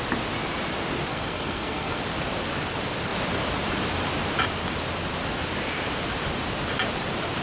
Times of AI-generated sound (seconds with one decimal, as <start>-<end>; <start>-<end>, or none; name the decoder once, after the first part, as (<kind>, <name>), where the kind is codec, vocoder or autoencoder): 1.1-2.0 (codec, SNAC)